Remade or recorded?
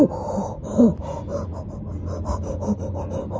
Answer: recorded